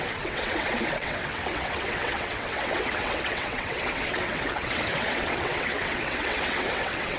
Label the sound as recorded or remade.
remade